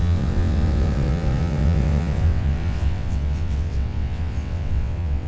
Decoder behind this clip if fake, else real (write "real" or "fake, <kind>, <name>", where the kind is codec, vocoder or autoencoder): fake, vocoder, WaveNeXt